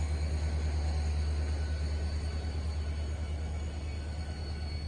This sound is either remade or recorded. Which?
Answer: recorded